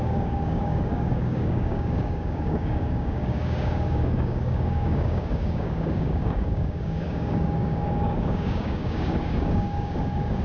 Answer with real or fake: fake